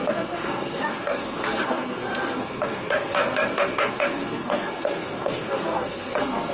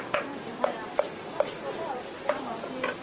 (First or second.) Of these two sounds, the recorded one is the second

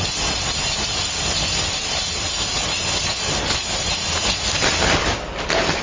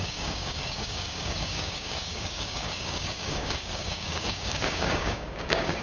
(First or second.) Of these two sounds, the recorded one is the first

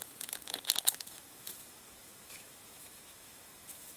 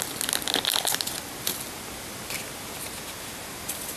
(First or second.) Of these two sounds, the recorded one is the second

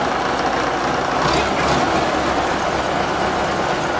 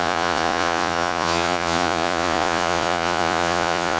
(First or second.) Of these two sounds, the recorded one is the first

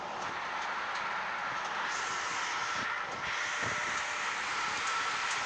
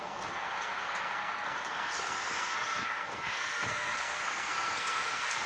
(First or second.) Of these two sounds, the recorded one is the first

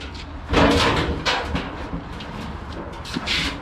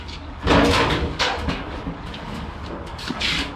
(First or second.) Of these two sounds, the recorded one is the first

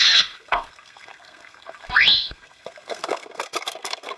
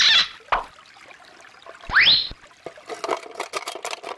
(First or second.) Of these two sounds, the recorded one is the second